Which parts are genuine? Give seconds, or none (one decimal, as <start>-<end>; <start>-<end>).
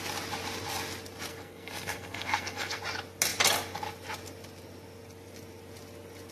0.0-1.3; 2.8-6.3